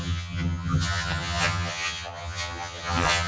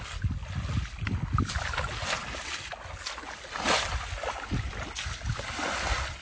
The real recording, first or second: second